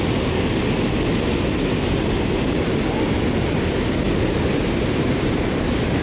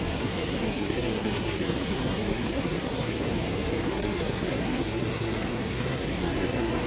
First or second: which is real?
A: first